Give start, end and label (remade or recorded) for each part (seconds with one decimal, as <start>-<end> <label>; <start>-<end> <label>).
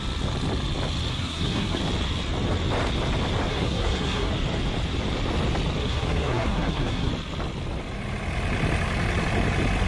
0.0-1.1 recorded; 1.1-1.8 remade; 1.8-3.5 recorded; 3.5-4.3 remade; 4.3-5.8 recorded; 5.8-7.1 remade; 7.1-9.9 recorded